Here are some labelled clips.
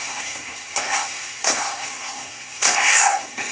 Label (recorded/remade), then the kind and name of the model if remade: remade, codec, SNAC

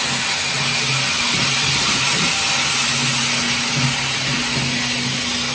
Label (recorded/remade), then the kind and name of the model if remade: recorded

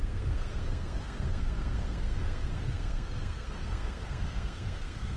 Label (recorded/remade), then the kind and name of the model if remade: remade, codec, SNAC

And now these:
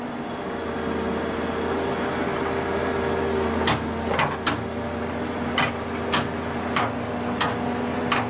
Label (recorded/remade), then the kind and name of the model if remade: recorded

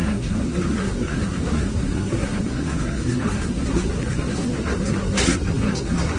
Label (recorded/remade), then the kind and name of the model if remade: remade, codec, SNAC